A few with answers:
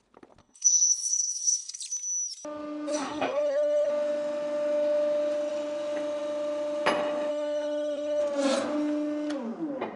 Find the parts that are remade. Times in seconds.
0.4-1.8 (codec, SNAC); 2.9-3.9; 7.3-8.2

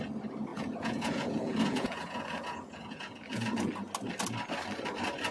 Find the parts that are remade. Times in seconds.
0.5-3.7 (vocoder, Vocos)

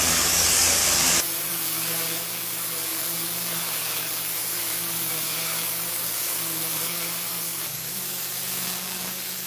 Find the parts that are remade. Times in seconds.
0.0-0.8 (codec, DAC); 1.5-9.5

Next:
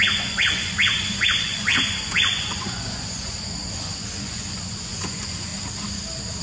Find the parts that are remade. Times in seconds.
0.0-5.5 (vocoder, Vocos)

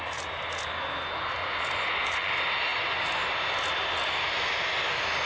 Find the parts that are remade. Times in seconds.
1.4-2.3 (vocoder, Vocos)